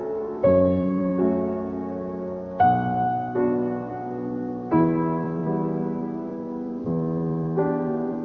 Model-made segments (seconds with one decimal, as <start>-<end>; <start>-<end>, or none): 0.0-1.1; 3.9-8.2